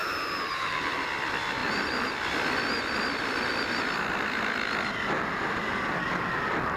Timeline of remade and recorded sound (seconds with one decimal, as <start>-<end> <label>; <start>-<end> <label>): 0.0-1.1 remade; 1.1-6.8 recorded